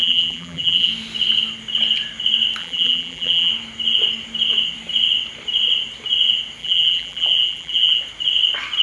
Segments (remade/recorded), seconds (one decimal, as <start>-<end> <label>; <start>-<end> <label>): 0.0-0.9 remade; 0.9-2.6 recorded; 2.6-3.5 remade; 3.5-6.6 recorded; 6.6-8.0 remade; 8.0-8.8 recorded